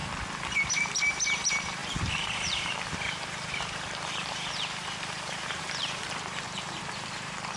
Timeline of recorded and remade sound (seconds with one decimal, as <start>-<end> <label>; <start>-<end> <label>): 0.0-0.7 recorded; 0.7-7.6 remade

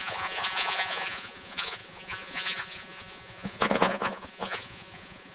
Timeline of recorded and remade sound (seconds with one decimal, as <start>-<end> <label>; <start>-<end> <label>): 0.0-5.3 remade

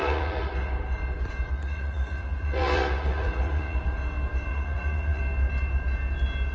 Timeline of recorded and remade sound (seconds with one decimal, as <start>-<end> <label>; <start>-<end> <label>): 0.0-0.7 remade; 0.7-1.5 recorded; 1.5-3.8 remade; 3.8-4.5 recorded; 4.5-5.2 remade; 5.2-6.5 recorded

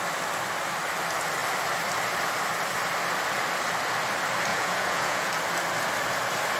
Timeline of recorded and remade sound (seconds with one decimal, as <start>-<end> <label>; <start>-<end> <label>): 0.0-4.5 recorded; 4.5-5.3 remade; 5.3-6.6 recorded

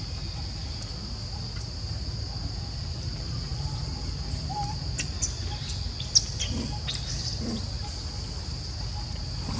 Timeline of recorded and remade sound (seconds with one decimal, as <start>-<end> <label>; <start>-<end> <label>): 0.0-9.6 recorded

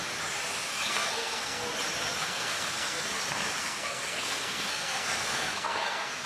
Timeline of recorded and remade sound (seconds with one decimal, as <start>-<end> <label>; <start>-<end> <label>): 0.0-0.7 recorded; 0.7-1.7 remade; 1.7-2.2 recorded; 2.2-3.2 remade; 3.2-3.6 recorded; 3.6-6.3 remade

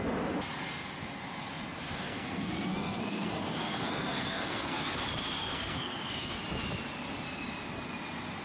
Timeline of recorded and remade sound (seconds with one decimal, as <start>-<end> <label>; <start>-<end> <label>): 0.0-2.0 recorded; 2.0-5.0 remade; 5.0-5.4 recorded; 5.4-6.4 remade; 6.4-8.4 recorded

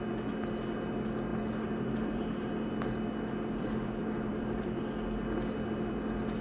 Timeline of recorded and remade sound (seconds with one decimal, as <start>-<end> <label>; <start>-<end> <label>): 0.0-1.3 recorded; 1.3-4.8 remade; 4.8-6.4 recorded